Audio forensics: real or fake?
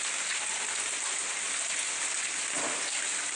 real